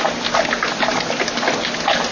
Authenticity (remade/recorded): recorded